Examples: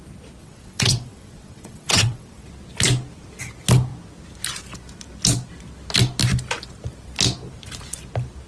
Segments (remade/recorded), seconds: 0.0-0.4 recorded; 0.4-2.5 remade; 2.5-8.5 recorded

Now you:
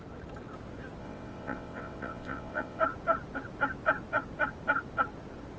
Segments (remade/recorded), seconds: 0.0-1.0 recorded; 1.0-2.8 remade; 2.8-5.6 recorded

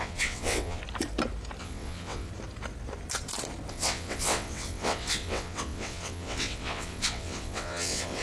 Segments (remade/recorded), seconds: 0.0-0.8 remade; 0.8-1.6 recorded; 1.6-2.3 remade; 2.3-3.7 recorded; 3.7-8.2 remade

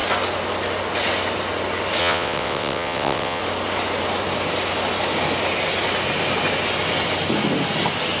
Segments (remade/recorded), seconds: 0.0-2.0 recorded; 2.0-3.4 remade; 3.4-8.2 recorded

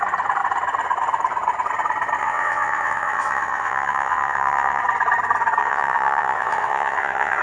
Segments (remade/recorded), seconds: 0.0-2.2 recorded; 2.2-4.8 remade; 4.8-5.6 recorded; 5.6-7.4 remade

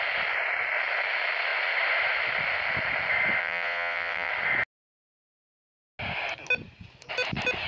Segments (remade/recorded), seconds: 0.0-3.4 recorded; 3.4-4.3 remade; 4.3-7.7 recorded

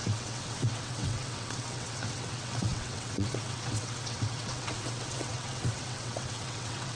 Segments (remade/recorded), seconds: 0.0-7.0 remade

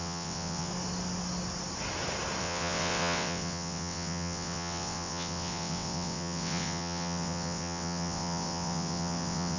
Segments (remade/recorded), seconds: 0.0-0.7 remade; 0.7-2.4 recorded; 2.4-9.6 remade